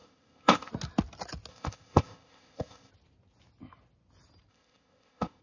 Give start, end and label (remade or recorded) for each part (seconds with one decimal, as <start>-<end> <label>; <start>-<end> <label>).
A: 0.0-0.7 remade; 0.7-1.5 recorded; 1.5-2.9 remade; 2.9-4.5 recorded; 4.5-5.4 remade